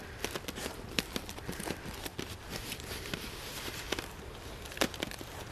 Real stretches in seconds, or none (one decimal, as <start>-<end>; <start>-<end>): 0.0-5.5